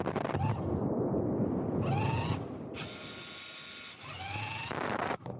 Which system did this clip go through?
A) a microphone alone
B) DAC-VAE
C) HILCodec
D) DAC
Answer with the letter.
A